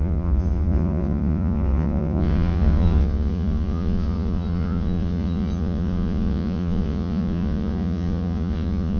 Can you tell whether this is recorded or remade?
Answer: remade